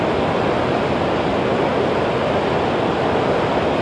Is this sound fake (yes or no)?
no